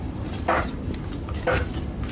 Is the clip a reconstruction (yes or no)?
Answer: no